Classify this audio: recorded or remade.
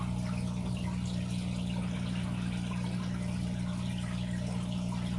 recorded